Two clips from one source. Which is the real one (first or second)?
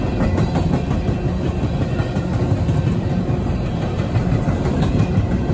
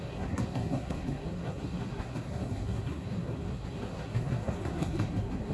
first